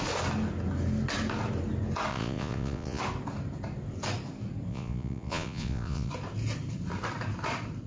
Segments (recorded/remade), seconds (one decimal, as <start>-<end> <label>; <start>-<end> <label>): 0.0-2.1 recorded; 2.1-3.0 remade; 3.0-4.7 recorded; 4.7-6.1 remade; 6.1-7.9 recorded